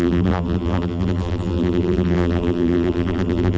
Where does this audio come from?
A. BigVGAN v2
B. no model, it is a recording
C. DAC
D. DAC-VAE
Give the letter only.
A